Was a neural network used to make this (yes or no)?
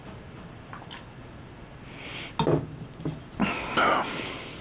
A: no